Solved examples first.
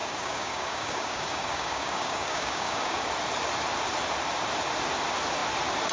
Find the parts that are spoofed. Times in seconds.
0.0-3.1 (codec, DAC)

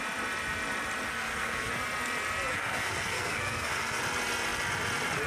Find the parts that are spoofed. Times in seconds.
1.1-1.7 (codec, SNAC); 2.5-4.0

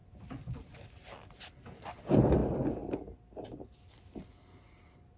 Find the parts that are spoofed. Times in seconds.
0.0-1.5 (vocoder, BigVGAN v2)

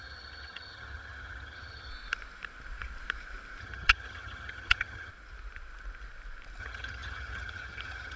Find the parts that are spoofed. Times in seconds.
0.0-1.9 (vocoder, HiFi-GAN); 3.6-5.1; 6.6-8.2